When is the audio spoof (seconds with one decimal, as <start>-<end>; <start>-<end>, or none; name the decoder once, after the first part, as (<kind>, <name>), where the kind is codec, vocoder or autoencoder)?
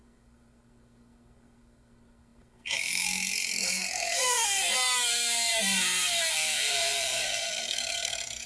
0.0-8.5 (codec, SNAC)